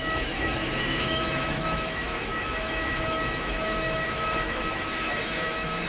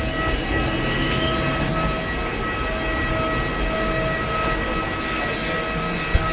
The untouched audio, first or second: second